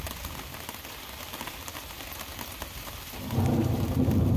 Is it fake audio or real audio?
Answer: real